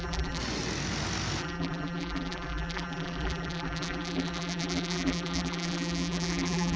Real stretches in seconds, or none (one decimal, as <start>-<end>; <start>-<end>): 0.4-1.4